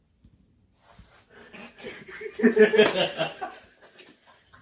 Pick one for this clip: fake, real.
real